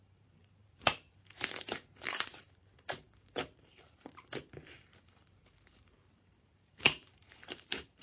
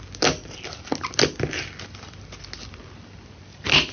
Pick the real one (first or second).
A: second